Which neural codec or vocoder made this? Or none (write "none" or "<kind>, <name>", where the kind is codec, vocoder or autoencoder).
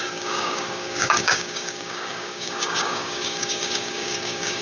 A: codec, DAC